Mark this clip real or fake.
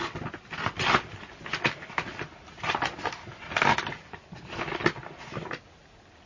real